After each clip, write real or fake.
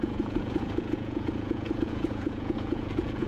fake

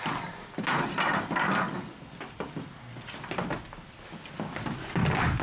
real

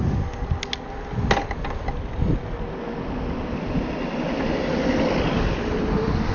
real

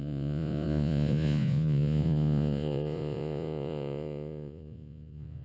fake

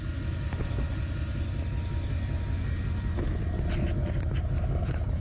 real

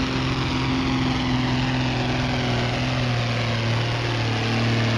real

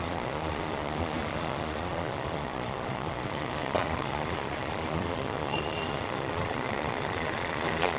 fake